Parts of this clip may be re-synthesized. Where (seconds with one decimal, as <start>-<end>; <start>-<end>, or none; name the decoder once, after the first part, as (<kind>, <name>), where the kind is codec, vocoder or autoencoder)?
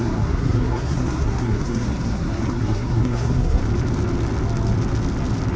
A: 0.0-3.6 (codec, SNAC)